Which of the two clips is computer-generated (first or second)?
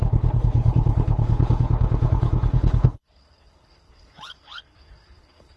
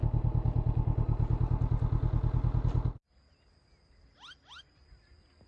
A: first